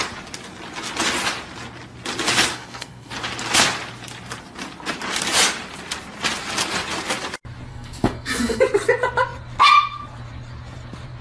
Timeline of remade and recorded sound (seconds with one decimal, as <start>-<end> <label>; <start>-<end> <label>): 0.0-2.5 recorded; 2.5-3.1 remade; 3.1-7.7 recorded; 7.7-8.6 remade; 8.6-11.2 recorded